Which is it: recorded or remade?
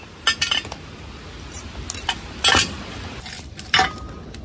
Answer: recorded